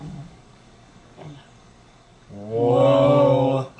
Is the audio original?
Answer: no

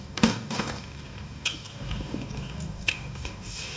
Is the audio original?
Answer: no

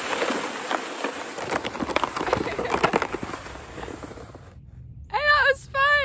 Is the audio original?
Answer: yes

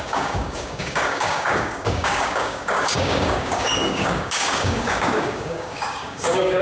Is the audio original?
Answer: no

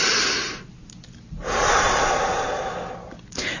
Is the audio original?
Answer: yes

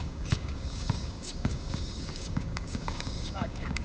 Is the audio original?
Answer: no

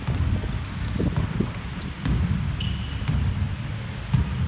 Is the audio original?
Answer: yes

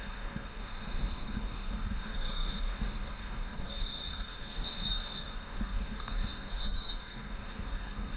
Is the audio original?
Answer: no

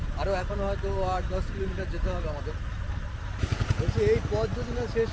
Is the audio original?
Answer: yes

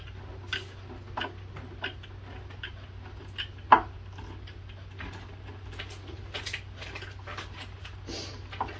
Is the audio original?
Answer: yes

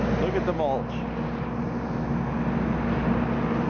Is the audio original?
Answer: yes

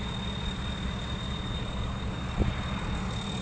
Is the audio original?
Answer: yes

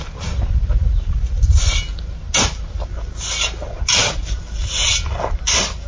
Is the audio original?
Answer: yes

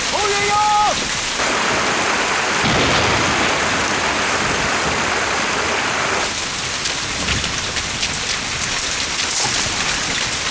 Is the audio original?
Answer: yes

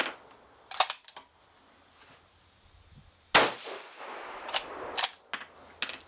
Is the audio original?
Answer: yes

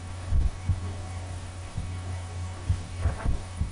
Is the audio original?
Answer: no